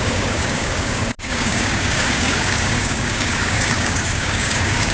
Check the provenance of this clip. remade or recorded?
remade